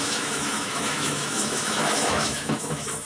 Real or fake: fake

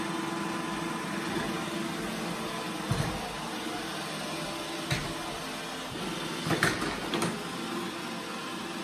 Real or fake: real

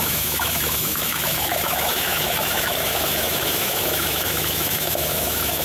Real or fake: fake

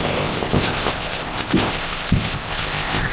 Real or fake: fake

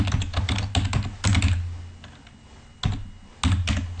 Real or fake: real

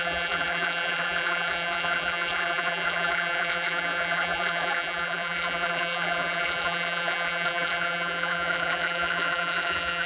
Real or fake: fake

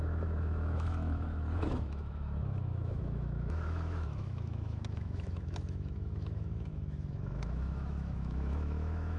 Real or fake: fake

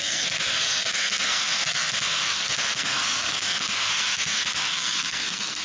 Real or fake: fake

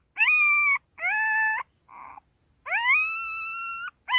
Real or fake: real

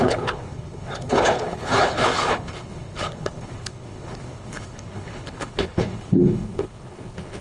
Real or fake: fake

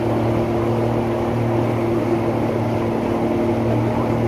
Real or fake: real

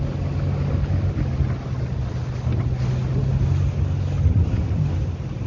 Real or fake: real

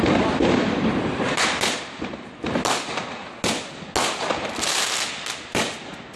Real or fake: real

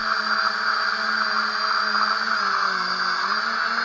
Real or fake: real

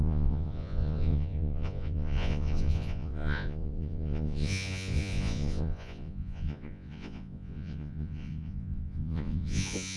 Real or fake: fake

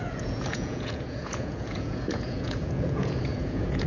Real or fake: fake